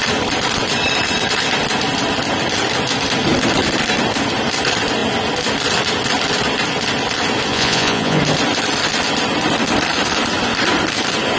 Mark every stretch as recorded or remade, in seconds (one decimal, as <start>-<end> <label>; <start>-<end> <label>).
0.0-7.5 recorded; 7.5-8.2 remade; 8.2-11.4 recorded